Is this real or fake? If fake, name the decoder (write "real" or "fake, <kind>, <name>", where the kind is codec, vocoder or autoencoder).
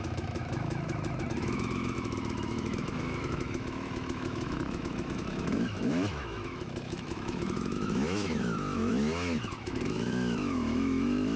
fake, autoencoder, DAC-VAE